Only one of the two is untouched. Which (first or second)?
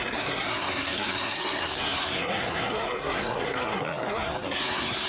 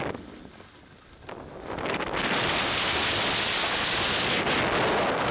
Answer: second